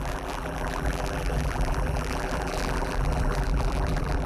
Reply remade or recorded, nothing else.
remade